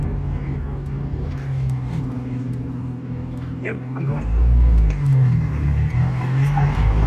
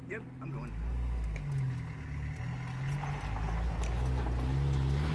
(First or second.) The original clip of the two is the second